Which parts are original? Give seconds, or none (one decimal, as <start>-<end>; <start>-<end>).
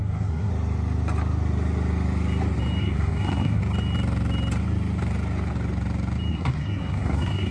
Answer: 0.5-2.8; 3.6-6.3